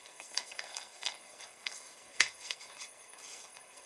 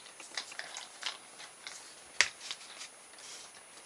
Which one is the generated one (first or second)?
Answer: first